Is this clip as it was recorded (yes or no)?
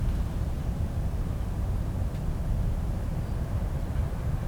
no